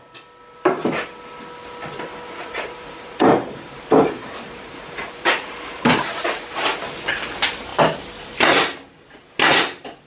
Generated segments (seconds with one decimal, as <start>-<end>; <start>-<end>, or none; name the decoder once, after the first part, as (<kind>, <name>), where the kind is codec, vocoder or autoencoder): 2.4-6.3 (vocoder, BigVGAN v2)